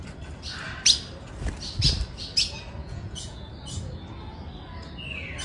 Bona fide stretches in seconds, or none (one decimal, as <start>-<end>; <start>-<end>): 0.0-2.8; 3.5-5.4